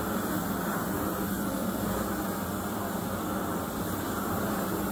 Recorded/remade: recorded